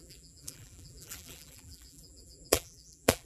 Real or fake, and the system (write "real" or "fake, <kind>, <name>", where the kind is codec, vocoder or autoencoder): fake, vocoder, BigVGAN v2